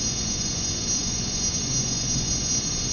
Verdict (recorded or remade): remade